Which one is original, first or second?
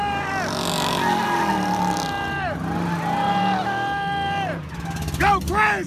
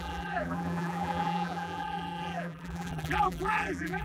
first